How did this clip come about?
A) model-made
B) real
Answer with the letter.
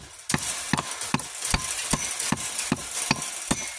B